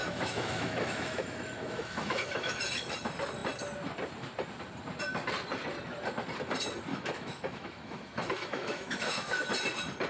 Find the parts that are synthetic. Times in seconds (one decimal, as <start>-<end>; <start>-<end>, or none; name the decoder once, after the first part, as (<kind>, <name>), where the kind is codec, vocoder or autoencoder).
0.0-2.6 (autoencoder, DAC-VAE); 6.9-9.5